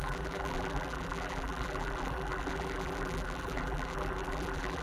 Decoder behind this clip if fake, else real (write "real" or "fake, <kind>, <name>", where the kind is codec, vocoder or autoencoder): fake, vocoder, BigVGAN v2